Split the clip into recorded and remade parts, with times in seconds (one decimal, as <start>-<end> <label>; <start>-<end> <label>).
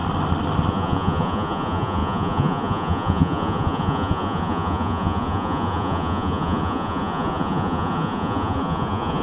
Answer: 0.0-0.7 recorded; 0.7-9.2 remade